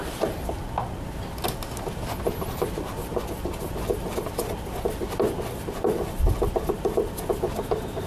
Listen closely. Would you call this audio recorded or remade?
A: recorded